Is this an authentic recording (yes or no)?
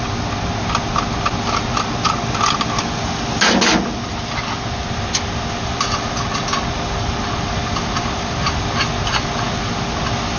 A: yes